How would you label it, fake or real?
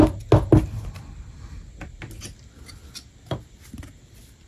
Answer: real